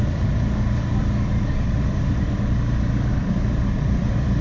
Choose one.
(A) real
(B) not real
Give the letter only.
B